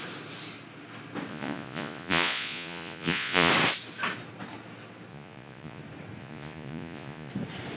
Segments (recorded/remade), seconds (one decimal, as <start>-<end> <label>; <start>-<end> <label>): 0.0-1.3 recorded; 1.3-3.5 remade; 3.5-5.1 recorded; 5.1-5.8 remade; 5.8-6.2 recorded; 6.2-7.3 remade; 7.3-7.8 recorded